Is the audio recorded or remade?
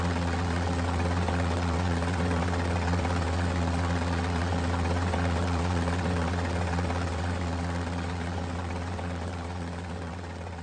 remade